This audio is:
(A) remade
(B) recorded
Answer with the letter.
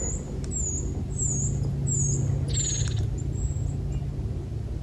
B